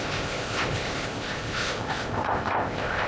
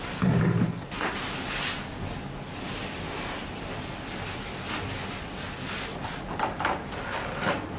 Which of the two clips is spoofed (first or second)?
first